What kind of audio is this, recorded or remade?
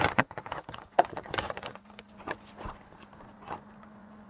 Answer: remade